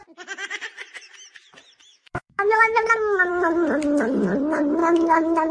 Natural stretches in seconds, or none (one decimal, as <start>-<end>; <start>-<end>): 0.0-1.9; 3.3-4.8